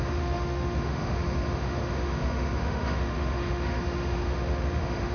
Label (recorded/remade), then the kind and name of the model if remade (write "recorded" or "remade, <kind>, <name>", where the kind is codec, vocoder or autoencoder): remade, autoencoder, DAC-VAE